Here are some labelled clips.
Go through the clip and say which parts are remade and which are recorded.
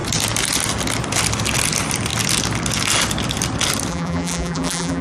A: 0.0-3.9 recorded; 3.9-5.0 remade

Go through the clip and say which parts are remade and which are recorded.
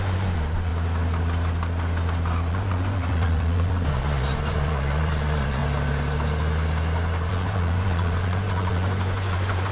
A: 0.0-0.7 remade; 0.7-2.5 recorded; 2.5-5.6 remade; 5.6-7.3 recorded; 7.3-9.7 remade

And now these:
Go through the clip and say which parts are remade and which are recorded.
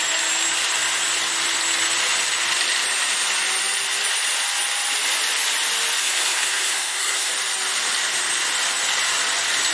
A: 0.0-6.0 recorded; 6.0-7.3 remade; 7.3-9.7 recorded